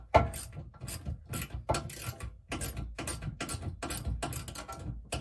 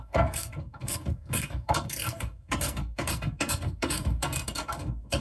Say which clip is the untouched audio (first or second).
first